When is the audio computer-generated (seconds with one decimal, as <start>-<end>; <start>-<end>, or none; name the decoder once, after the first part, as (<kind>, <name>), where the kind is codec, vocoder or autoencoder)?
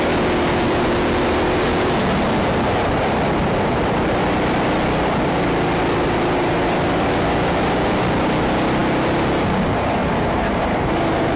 10.0-11.4 (vocoder, BigVGAN v2)